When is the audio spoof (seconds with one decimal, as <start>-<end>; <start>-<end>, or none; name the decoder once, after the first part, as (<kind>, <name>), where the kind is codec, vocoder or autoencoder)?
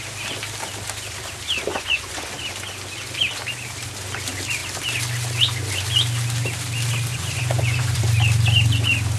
1.7-2.3 (vocoder, Vocos); 7.1-8.0